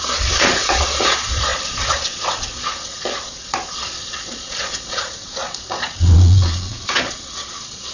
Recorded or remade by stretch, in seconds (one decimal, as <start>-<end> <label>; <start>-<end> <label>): 0.0-7.9 remade